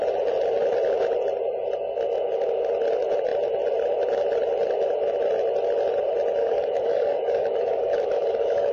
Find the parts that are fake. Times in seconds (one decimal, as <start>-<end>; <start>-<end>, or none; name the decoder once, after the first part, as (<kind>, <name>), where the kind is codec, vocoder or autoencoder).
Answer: 6.4-8.7 (codec, DAC)